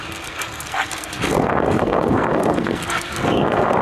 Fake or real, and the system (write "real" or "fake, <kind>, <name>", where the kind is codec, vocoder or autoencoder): fake, codec, SNAC